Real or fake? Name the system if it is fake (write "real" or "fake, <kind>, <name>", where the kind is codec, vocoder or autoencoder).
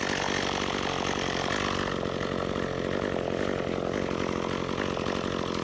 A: real